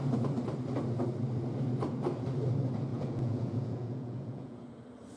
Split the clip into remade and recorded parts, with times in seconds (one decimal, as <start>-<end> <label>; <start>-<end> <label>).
0.0-2.9 recorded; 2.9-4.6 remade; 4.6-5.2 recorded

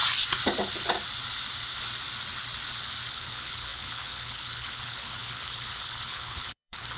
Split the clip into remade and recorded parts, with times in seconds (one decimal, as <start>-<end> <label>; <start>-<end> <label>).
0.0-3.1 recorded; 3.1-7.0 remade

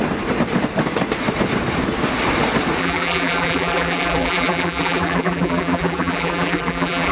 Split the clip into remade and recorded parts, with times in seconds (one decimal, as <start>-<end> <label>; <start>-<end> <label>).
0.0-2.8 recorded; 2.8-7.1 remade

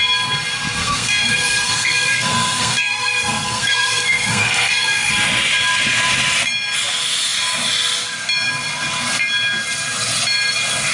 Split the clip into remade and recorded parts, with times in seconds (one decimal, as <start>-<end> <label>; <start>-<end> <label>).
0.0-0.8 recorded; 0.8-5.1 remade; 5.1-10.9 recorded

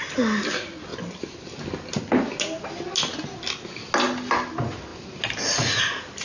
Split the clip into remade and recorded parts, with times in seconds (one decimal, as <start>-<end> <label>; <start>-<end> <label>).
0.0-6.2 recorded